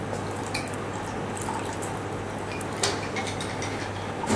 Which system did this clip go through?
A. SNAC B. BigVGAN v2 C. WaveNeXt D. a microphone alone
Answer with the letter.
D